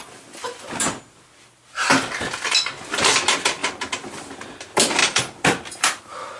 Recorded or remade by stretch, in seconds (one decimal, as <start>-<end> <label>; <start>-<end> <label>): 0.0-6.4 recorded